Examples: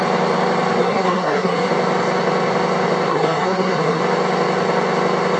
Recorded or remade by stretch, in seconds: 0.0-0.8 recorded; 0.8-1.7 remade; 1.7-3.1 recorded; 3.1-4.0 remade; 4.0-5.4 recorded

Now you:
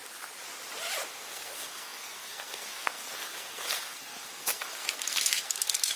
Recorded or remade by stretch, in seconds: 0.0-1.1 recorded; 1.1-6.0 remade

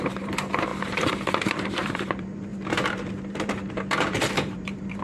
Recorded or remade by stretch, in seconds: 0.0-5.0 remade

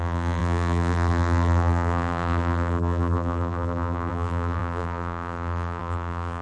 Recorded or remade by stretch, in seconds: 0.0-6.4 remade